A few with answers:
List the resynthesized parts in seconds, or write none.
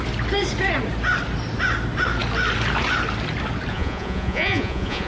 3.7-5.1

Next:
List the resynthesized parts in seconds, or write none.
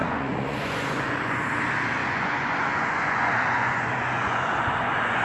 0.0-1.4; 2.0-5.2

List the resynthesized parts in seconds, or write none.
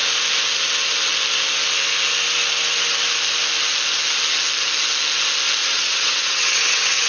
5.6-7.1